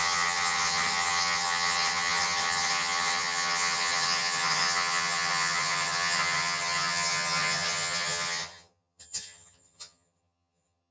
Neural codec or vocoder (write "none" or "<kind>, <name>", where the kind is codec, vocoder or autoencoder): vocoder, HiFi-GAN